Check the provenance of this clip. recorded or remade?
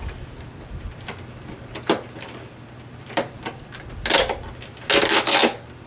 recorded